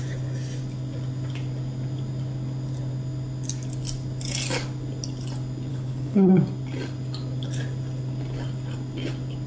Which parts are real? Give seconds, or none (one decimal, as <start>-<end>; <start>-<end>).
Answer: 0.0-5.7; 6.3-9.5